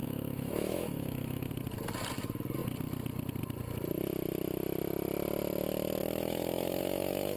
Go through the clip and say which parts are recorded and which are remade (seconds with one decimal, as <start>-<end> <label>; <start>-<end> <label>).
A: 0.0-1.5 remade; 1.5-6.0 recorded; 6.0-7.4 remade